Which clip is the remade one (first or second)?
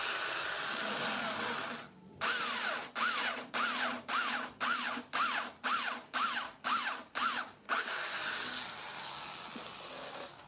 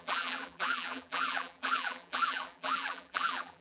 second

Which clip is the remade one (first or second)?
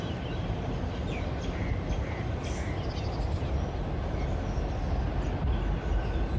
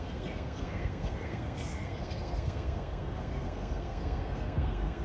second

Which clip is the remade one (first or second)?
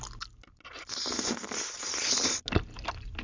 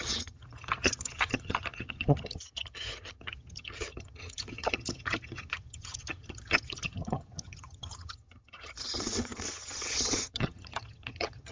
second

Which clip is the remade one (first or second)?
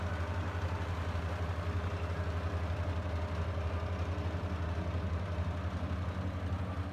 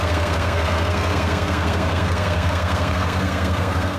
second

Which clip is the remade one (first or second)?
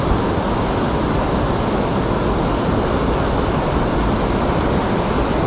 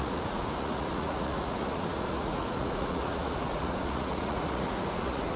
second